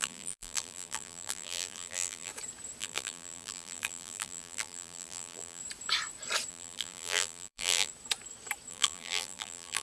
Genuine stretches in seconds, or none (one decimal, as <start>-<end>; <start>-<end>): 2.3-2.8; 5.6-6.5; 7.9-8.7